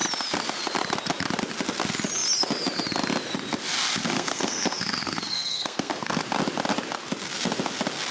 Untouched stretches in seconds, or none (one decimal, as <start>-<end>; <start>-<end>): 0.0-4.0; 6.2-8.1